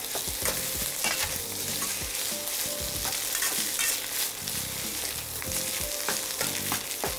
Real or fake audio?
real